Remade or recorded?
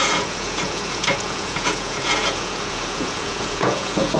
remade